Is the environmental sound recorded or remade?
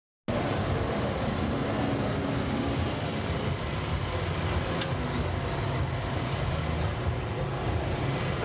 recorded